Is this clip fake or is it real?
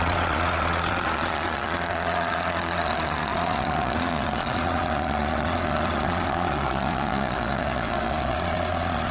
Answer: fake